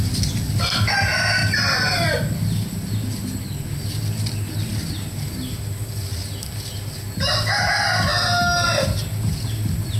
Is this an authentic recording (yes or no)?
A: yes